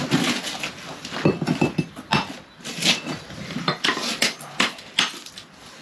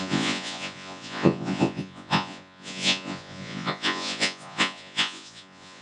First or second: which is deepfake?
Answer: second